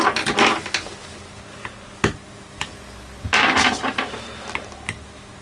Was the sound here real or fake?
real